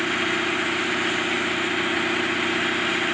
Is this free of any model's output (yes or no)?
yes